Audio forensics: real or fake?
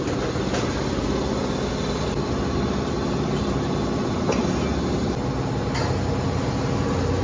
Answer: real